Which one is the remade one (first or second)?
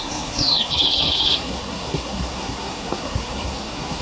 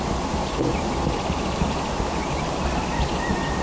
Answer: first